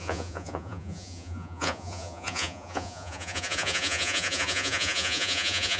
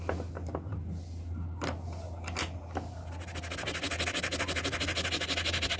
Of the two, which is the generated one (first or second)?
first